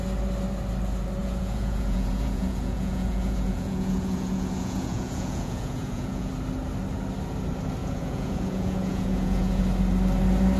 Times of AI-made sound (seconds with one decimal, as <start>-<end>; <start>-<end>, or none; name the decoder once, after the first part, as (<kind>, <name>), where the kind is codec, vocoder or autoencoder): 1.2-6.3 (vocoder, Vocos); 7.8-9.6